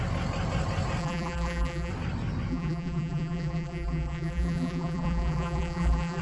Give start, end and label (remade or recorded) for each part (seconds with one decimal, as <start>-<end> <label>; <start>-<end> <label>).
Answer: 0.0-1.0 recorded; 1.0-1.9 remade; 1.9-2.5 recorded; 2.5-6.2 remade